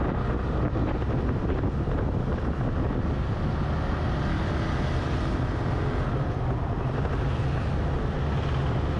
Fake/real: real